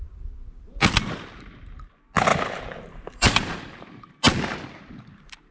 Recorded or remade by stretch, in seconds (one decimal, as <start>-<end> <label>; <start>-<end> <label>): 0.0-2.3 recorded; 2.3-4.1 remade; 4.1-5.5 recorded